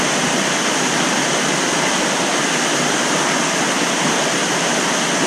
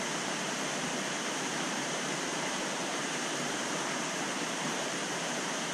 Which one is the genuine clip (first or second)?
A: first